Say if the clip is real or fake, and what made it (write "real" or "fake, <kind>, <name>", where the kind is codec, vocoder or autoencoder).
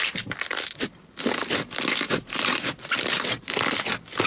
fake, vocoder, BigVGAN v2